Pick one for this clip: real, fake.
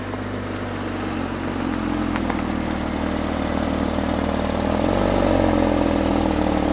real